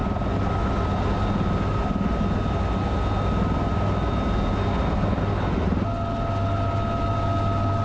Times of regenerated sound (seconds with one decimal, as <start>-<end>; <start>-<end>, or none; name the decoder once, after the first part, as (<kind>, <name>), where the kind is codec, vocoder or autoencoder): none